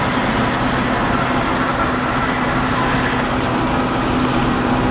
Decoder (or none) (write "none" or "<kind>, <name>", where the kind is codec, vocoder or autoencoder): none